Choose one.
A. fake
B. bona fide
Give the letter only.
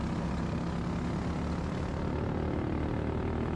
B